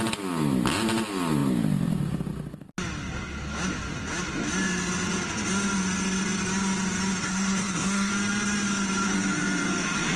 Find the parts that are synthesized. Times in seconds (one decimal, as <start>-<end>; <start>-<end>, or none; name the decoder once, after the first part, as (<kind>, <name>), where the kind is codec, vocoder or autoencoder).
7.2-8.1 (codec, SNAC)